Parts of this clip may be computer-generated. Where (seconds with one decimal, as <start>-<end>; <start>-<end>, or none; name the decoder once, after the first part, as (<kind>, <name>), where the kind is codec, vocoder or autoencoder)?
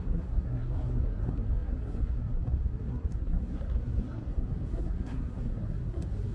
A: 0.0-6.3 (codec, SNAC)